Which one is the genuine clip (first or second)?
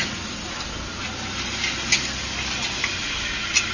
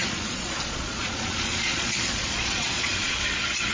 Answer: first